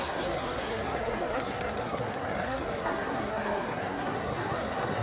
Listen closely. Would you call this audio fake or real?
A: fake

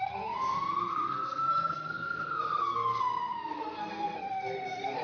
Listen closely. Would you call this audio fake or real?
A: fake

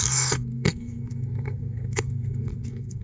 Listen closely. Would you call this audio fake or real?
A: fake